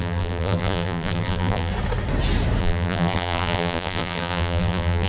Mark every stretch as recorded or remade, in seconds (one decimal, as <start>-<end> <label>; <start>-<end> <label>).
0.0-1.7 remade; 1.7-2.6 recorded; 2.6-5.1 remade